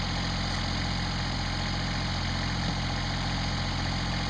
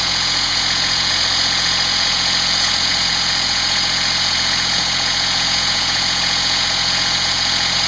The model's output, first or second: second